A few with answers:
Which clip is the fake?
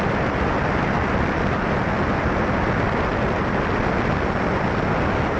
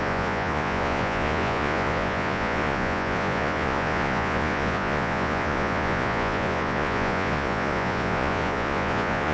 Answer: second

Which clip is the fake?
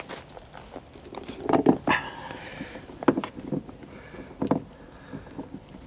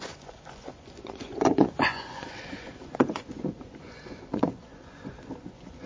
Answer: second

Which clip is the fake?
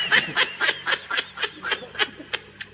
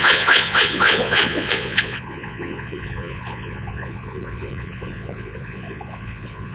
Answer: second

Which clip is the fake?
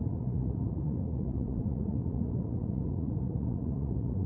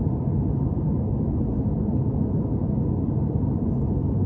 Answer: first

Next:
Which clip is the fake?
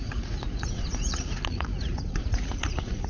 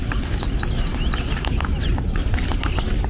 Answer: first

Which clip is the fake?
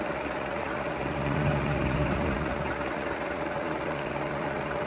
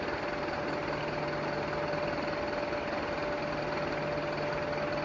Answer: first